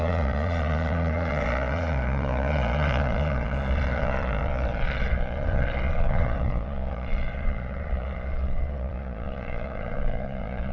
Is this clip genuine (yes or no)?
no